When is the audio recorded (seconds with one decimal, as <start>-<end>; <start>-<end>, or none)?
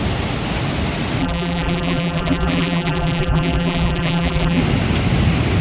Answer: 0.0-1.2; 4.6-5.6